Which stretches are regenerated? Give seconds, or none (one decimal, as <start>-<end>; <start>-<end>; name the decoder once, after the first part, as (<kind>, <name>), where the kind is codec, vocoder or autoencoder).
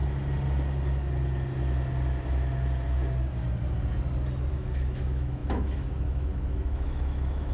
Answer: 4.5-7.5 (autoencoder, DAC-VAE)